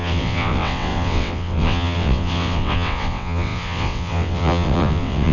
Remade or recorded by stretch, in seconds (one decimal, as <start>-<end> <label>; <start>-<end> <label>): 0.0-5.3 remade